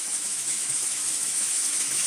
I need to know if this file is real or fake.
fake